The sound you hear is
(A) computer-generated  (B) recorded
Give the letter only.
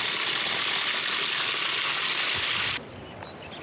B